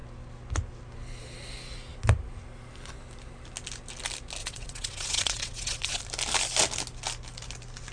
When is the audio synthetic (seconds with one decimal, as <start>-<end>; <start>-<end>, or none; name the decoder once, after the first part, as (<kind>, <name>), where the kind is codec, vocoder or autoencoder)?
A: 4.4-6.0 (vocoder, WaveNeXt)